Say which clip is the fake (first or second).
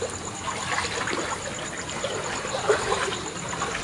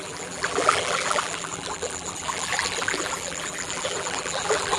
second